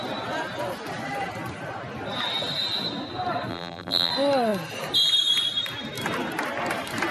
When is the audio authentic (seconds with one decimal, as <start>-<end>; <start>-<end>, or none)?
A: 0.0-3.5; 4.1-7.1